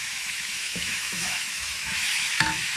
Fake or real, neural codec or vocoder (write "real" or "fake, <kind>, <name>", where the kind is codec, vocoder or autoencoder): fake, autoencoder, DAC-VAE